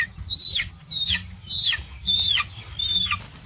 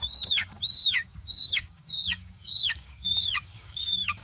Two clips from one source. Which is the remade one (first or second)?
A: second